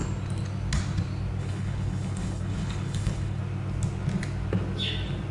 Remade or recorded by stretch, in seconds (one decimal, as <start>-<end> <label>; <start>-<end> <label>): 0.0-1.4 recorded; 1.4-3.4 remade; 3.4-5.3 recorded